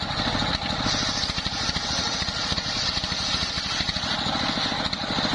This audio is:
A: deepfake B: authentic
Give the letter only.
B